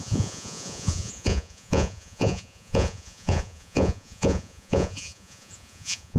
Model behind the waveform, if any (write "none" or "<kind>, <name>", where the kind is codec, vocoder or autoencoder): vocoder, Vocos